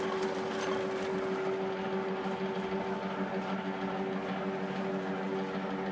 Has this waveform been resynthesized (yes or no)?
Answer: no